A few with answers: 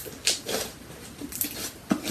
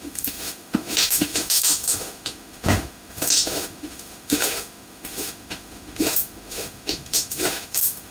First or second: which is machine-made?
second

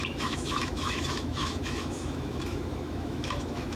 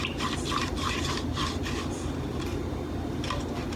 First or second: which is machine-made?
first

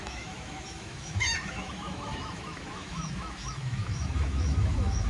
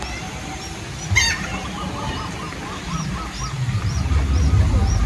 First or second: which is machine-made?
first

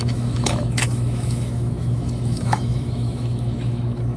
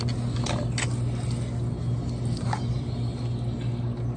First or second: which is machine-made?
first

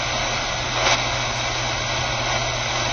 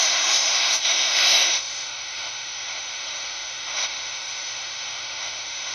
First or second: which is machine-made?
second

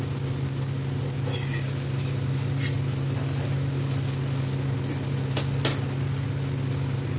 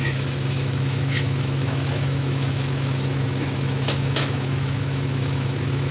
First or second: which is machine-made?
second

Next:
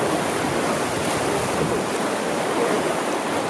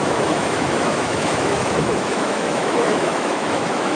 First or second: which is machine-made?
second